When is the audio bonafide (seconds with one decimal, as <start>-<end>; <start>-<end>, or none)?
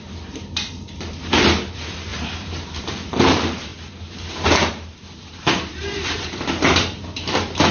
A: 3.7-4.7